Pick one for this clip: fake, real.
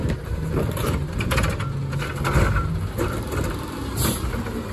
real